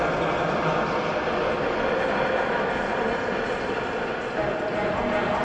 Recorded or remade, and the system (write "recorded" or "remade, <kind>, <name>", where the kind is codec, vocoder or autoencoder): recorded